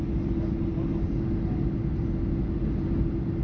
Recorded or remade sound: recorded